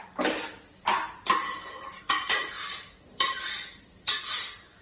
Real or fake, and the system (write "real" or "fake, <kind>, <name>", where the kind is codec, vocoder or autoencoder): real